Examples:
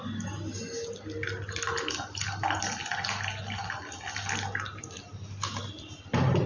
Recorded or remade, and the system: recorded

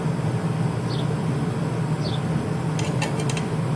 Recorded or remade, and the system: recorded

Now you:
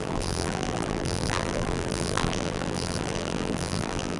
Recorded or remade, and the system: remade, vocoder, BigVGAN v2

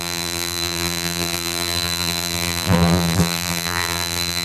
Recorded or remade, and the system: remade, vocoder, BigVGAN v2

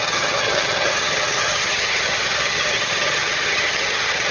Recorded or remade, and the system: remade, vocoder, HiFi-GAN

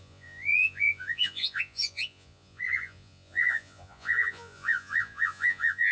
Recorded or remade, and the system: remade, vocoder, Vocos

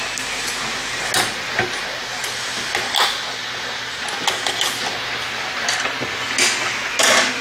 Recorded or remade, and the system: recorded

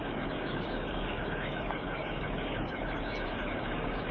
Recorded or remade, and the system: remade, codec, DAC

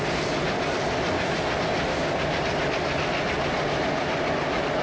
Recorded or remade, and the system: recorded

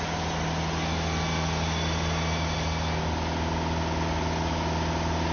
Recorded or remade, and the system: recorded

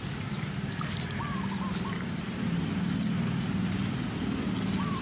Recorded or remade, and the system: recorded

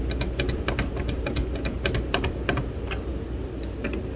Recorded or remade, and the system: recorded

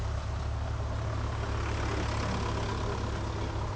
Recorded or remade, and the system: recorded